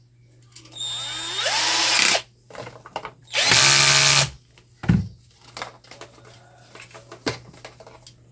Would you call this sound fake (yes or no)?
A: no